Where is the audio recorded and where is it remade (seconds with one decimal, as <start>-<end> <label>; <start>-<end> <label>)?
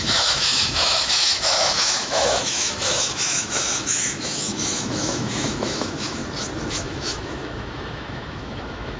0.0-6.2 remade; 6.2-6.7 recorded; 6.7-9.0 remade